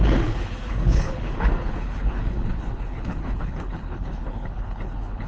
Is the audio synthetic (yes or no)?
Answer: yes